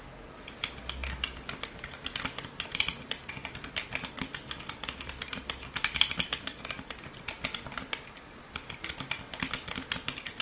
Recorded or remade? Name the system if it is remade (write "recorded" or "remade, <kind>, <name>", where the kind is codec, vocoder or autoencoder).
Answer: recorded